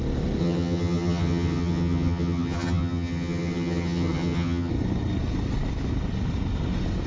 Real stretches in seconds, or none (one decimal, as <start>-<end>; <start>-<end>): 0.0-0.4; 4.7-7.1